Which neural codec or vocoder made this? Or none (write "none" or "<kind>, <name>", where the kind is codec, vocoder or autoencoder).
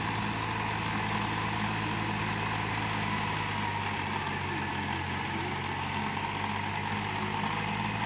none